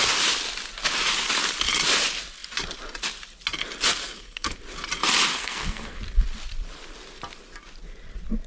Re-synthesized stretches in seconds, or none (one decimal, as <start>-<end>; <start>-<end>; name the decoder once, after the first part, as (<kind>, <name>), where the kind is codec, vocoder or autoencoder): 4.0-4.6 (codec, SNAC); 5.3-6.0